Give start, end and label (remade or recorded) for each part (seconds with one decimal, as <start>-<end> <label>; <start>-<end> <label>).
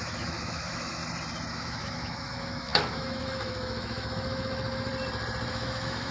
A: 0.0-1.0 remade; 1.0-1.5 recorded; 1.5-4.9 remade; 4.9-5.5 recorded; 5.5-6.1 remade